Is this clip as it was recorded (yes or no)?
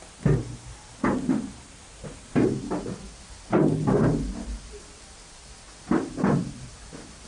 yes